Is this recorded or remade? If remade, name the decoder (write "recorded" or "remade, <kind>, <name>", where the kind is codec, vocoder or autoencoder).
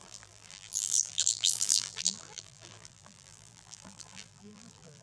remade, vocoder, BigVGAN v2